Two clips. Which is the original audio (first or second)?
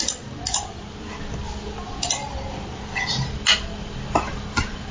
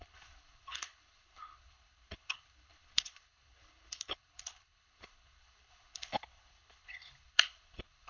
first